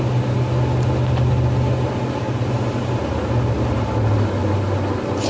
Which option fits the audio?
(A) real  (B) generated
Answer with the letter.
A